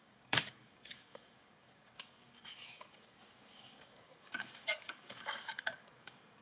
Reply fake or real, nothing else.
fake